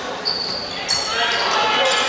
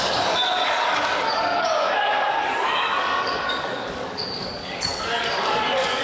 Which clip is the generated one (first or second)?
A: second